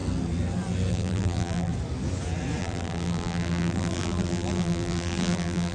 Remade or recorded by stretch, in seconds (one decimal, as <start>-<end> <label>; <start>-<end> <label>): 0.0-0.9 recorded; 0.9-1.7 remade; 1.7-2.6 recorded; 2.6-5.7 remade